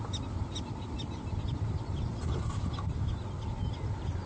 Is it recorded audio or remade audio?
recorded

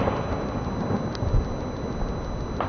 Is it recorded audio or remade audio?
recorded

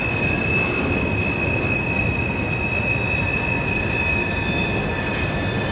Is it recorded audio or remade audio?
recorded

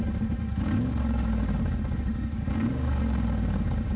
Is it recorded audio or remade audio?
remade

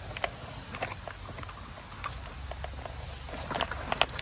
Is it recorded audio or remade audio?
recorded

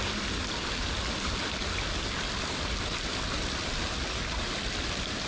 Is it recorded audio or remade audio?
recorded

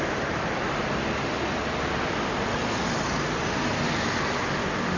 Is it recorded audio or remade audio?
recorded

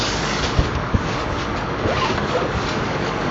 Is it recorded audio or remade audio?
remade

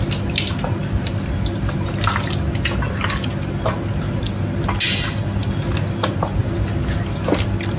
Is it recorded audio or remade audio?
recorded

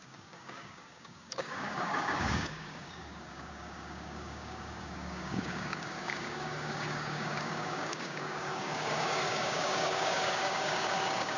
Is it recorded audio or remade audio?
remade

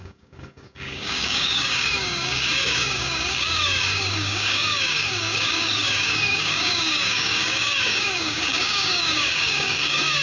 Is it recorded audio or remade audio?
remade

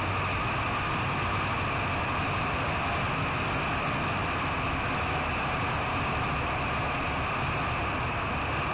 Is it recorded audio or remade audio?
recorded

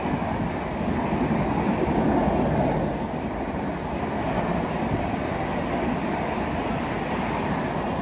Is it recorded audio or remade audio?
recorded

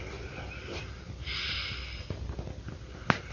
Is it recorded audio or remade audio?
recorded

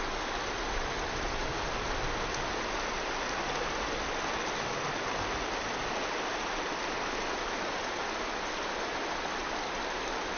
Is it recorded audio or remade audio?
recorded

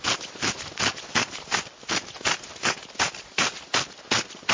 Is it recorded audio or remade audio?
recorded